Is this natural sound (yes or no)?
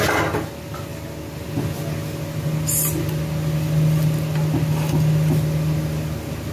yes